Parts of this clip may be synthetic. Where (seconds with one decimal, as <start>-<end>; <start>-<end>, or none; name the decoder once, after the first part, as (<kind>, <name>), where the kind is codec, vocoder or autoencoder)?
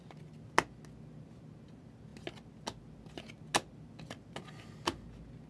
none